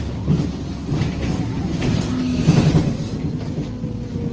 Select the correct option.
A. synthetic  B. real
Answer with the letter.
B